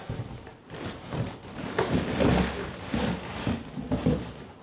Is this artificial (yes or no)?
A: no